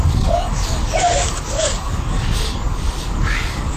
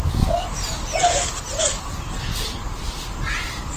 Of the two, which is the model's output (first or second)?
first